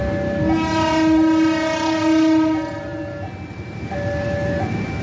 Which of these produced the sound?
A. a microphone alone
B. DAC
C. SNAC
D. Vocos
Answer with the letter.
A